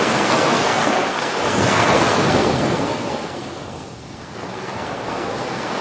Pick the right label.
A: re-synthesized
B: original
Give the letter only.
A